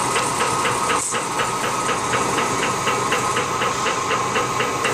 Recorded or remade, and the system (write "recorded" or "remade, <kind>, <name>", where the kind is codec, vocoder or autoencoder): recorded